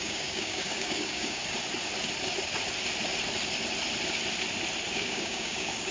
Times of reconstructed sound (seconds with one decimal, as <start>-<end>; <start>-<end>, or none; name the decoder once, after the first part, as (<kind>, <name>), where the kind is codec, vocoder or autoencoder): 0.0-1.4 (codec, DAC); 4.9-5.9